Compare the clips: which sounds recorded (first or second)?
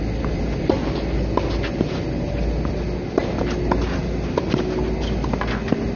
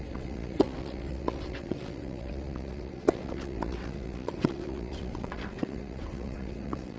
first